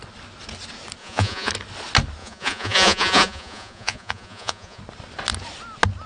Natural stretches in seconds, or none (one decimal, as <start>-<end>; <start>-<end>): 0.0-1.0; 1.5-2.2; 4.8-6.1